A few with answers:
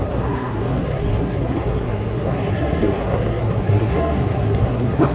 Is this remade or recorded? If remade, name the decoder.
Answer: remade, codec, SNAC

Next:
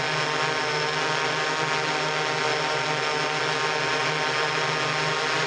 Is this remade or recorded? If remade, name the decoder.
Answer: recorded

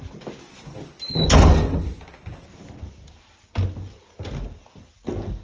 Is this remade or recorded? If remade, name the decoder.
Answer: recorded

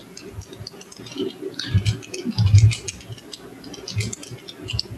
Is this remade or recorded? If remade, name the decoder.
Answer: recorded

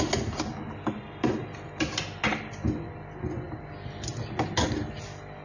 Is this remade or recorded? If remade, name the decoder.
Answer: recorded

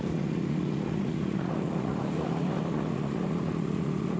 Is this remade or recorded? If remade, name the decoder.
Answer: remade, vocoder, Vocos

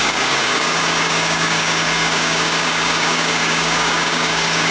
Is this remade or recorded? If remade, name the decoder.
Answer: remade, codec, DAC